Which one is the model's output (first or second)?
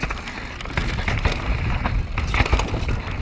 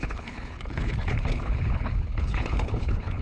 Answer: second